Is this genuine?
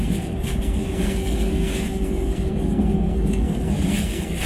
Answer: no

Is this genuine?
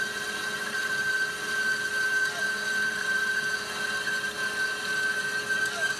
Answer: yes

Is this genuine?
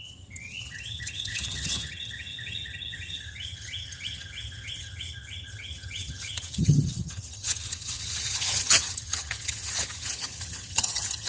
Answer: no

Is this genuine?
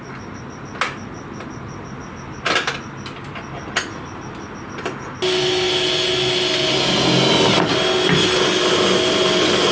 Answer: yes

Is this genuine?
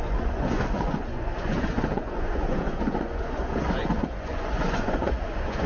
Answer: no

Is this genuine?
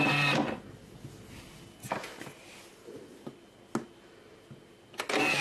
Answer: yes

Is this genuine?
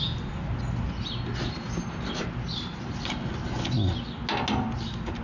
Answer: yes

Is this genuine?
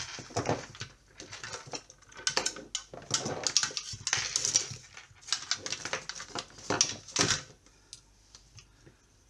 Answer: yes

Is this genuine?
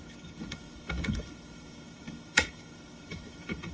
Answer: no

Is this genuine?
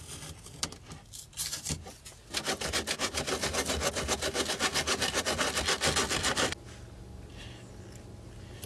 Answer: yes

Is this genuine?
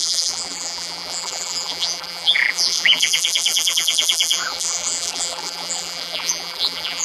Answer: no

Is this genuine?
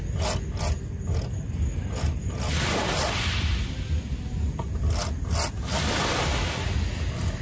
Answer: yes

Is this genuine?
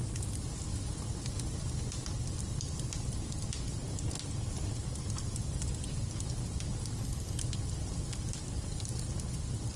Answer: yes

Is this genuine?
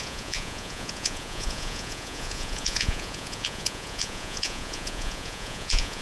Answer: no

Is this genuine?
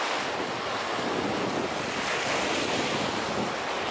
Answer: yes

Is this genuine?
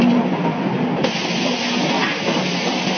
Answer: yes